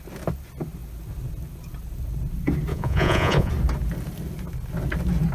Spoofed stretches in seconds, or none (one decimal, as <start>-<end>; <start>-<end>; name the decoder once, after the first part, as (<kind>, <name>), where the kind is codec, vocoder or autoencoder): 2.7-3.5 (vocoder, Vocos)